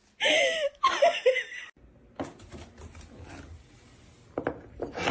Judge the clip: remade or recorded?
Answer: recorded